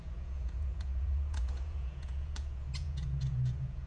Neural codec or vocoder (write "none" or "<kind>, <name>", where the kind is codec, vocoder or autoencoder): vocoder, Vocos